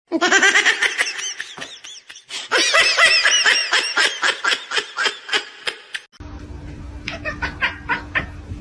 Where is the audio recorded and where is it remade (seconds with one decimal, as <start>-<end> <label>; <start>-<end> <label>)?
0.0-8.6 recorded

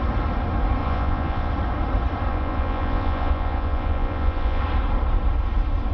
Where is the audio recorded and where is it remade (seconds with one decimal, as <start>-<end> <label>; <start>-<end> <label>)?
0.0-0.8 recorded; 0.8-1.5 remade; 1.5-2.3 recorded; 2.3-4.6 remade; 4.6-5.9 recorded

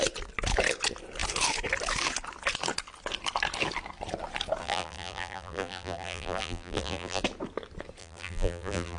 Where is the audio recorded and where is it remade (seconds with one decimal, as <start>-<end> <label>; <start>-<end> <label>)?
0.0-4.6 recorded; 4.6-7.2 remade; 7.2-8.0 recorded; 8.0-9.0 remade

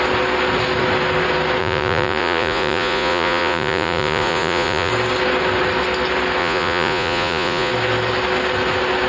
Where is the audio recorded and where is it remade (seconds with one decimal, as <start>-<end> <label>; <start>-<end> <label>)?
0.0-1.6 recorded; 1.6-4.9 remade; 4.9-6.4 recorded; 6.4-7.7 remade; 7.7-9.1 recorded